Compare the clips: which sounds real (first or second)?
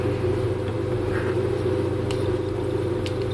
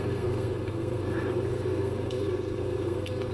first